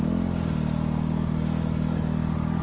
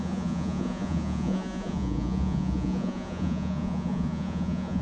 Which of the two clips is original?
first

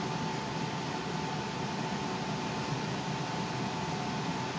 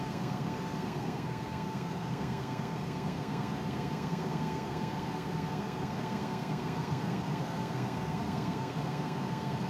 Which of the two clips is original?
first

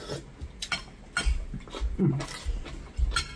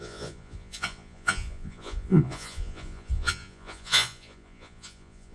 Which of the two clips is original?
first